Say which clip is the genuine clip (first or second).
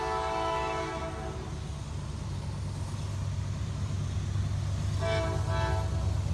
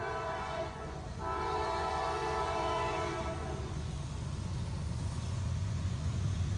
first